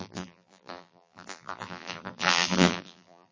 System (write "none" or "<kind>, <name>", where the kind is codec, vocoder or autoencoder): vocoder, BigVGAN v2